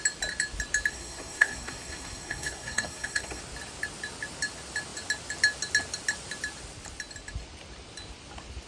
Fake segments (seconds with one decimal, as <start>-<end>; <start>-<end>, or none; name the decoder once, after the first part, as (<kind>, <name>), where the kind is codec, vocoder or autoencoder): 0.9-3.4 (codec, SNAC)